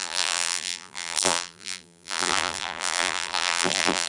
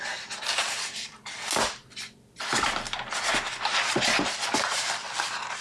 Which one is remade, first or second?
first